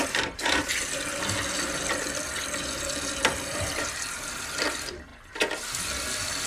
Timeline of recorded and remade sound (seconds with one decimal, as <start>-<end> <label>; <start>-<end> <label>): 0.0-0.7 remade; 0.7-2.3 recorded; 2.3-4.4 remade; 4.4-6.5 recorded